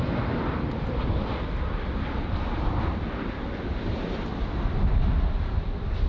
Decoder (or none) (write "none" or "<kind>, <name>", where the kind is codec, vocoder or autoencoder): none